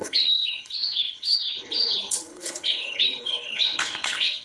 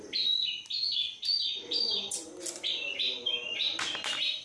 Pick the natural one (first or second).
second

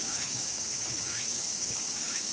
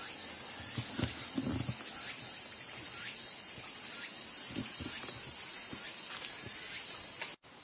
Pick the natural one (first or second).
second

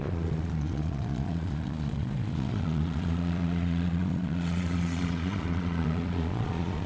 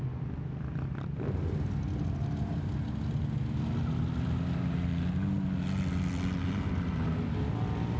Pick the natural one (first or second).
second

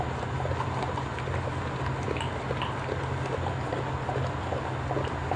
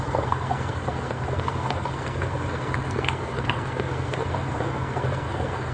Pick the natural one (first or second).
first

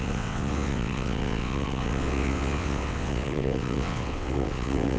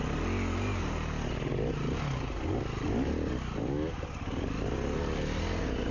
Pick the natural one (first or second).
second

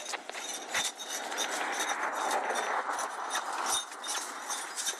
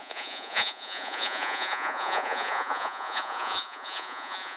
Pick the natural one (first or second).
first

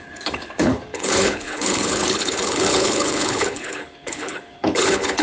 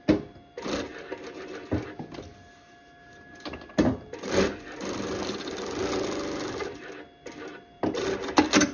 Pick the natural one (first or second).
second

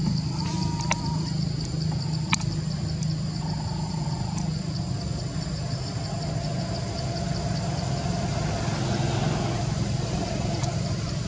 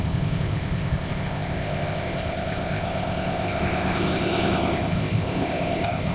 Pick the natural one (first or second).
first